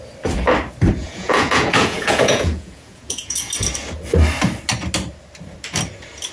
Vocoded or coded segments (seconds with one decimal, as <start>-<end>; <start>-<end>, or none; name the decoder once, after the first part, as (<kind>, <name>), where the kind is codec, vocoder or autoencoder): 1.0-3.4 (vocoder, Vocos)